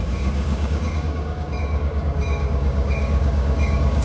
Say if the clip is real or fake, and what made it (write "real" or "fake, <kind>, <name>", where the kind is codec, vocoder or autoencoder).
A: fake, codec, DAC